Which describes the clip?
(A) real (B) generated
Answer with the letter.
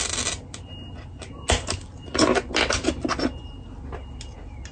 A